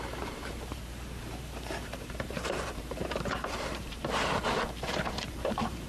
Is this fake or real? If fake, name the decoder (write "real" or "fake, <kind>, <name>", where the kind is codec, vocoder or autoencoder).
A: fake, vocoder, BigVGAN v2